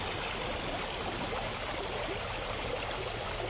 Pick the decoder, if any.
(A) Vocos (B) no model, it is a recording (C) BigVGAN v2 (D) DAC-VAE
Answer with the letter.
B